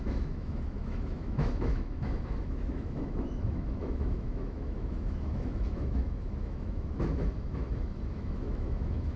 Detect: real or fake fake